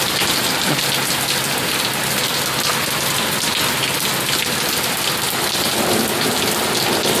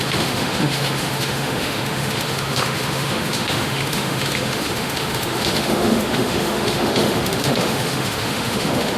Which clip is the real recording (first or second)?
first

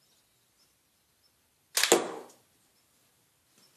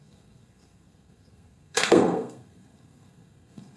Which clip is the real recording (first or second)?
first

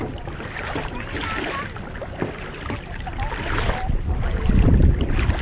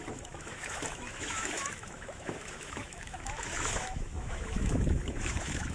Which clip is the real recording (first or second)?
first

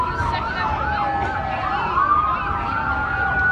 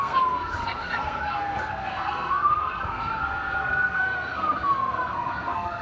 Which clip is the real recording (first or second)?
first